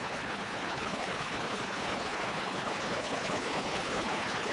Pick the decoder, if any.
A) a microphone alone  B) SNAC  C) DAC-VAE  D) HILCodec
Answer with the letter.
D